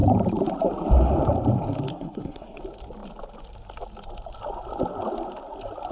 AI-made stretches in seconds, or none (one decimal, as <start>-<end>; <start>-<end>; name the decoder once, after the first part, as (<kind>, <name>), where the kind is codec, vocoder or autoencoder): 1.9-2.6 (codec, SNAC)